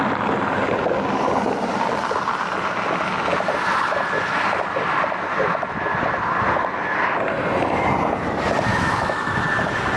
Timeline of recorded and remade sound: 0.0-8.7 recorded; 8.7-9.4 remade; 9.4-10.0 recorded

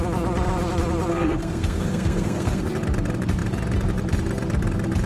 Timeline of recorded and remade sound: 0.0-1.1 recorded; 1.1-2.6 remade; 2.6-5.1 recorded

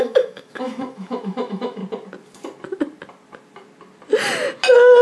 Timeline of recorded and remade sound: 0.0-1.8 remade; 1.8-5.0 recorded

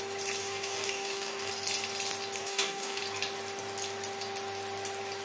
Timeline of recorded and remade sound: 0.0-0.4 recorded; 0.4-1.5 remade; 1.5-2.4 recorded; 2.4-3.0 remade; 3.0-5.2 recorded

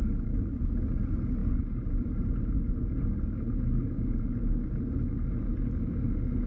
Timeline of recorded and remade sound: 0.0-6.5 recorded

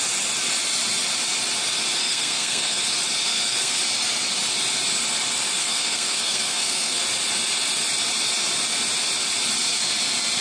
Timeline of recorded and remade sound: 0.0-2.0 recorded; 2.0-2.8 remade; 2.8-3.3 recorded; 3.3-3.8 remade; 3.8-5.6 recorded; 5.6-7.0 remade; 7.0-10.4 recorded

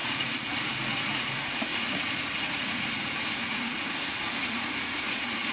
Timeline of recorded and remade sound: 0.0-5.5 remade

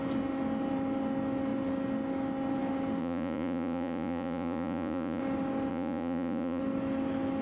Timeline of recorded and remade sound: 0.0-3.0 recorded; 3.0-5.2 remade; 5.2-5.7 recorded; 5.7-6.6 remade; 6.6-7.4 recorded